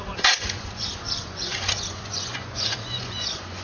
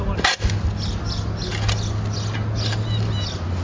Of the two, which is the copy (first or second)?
first